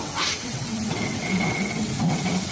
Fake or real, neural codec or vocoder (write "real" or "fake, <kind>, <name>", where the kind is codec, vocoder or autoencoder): fake, vocoder, WaveNeXt